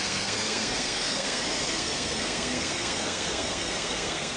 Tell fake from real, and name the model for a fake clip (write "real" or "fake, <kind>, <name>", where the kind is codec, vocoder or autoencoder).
fake, codec, SNAC